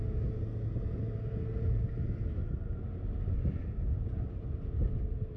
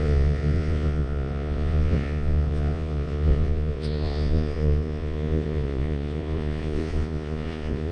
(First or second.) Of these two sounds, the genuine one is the first